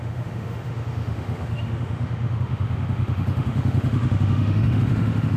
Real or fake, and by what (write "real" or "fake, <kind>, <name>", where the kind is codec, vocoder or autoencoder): fake, autoencoder, DAC-VAE